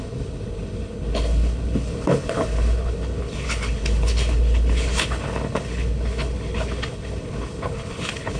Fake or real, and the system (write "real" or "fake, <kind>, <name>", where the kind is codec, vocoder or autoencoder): fake, codec, HILCodec